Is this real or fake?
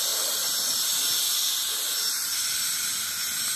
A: real